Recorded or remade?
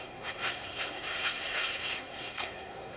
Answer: remade